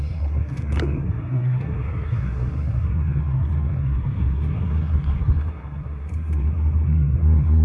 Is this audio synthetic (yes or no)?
yes